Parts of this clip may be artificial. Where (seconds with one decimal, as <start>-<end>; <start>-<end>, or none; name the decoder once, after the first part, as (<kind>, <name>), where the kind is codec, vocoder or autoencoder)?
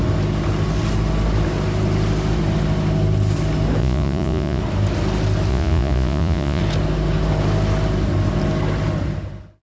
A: 3.8-4.6 (vocoder, Vocos); 5.5-6.6